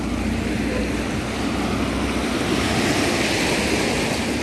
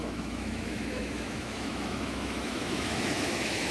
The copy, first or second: second